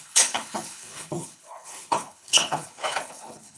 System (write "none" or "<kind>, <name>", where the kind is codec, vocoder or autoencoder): codec, HILCodec